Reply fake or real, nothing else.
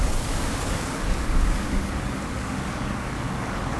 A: fake